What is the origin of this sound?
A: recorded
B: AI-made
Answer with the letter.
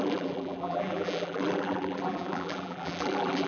B